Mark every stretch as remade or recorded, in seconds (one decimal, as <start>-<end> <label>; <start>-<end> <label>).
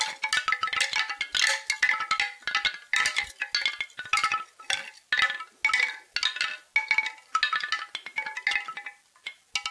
0.0-9.7 recorded